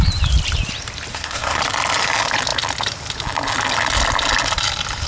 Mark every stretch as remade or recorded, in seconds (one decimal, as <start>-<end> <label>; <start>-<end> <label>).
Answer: 0.0-1.1 recorded; 1.1-1.6 remade; 1.6-5.1 recorded